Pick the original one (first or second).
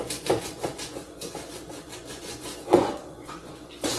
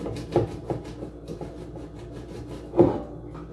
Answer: second